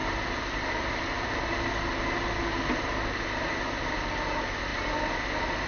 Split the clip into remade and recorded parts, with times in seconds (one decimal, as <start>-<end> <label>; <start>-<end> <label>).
0.0-5.7 recorded